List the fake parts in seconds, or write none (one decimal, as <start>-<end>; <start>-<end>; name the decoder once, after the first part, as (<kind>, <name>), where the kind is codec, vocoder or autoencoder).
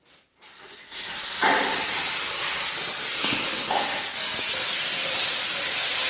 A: 3.2-3.8 (codec, HILCodec)